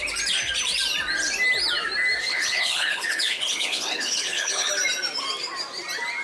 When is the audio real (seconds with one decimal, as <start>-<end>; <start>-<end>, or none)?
0.0-2.3; 4.7-6.2